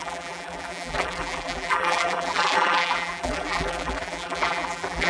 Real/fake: fake